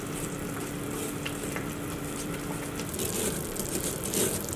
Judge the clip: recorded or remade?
remade